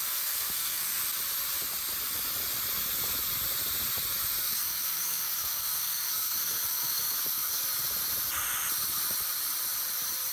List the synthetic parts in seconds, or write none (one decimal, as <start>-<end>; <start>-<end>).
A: 0.0-1.0; 4.4-7.6